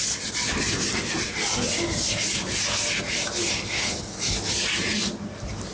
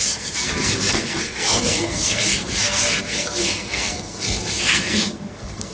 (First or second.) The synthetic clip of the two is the second